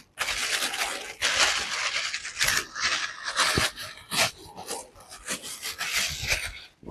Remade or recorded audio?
recorded